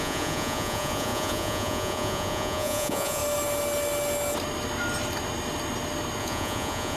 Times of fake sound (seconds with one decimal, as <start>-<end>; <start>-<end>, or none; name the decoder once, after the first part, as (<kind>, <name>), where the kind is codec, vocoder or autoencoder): 0.0-3.2 (vocoder, Vocos); 6.2-7.0